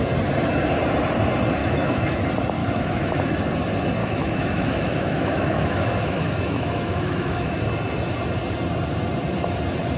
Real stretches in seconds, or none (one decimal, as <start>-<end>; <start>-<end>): 0.0-1.6; 2.2-2.6; 3.2-4.0; 7.6-10.0